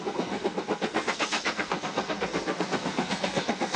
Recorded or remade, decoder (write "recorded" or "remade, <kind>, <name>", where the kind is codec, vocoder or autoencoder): remade, codec, SNAC